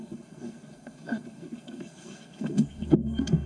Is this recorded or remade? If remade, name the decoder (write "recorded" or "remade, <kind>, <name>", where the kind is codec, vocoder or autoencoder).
remade, codec, SNAC